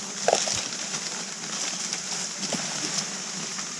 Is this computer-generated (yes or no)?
no